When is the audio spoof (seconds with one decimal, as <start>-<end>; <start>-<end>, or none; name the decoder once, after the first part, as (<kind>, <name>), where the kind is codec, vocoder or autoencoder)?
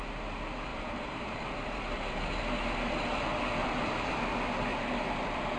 0.7-2.4 (vocoder, BigVGAN v2); 3.6-4.1; 4.7-5.6